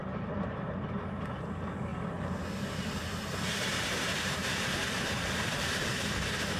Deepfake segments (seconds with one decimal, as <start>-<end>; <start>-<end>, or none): 0.0-1.9; 2.7-6.6